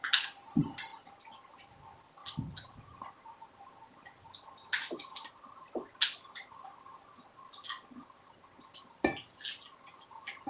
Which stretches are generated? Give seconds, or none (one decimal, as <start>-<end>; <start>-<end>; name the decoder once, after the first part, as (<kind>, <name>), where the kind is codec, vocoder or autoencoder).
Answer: none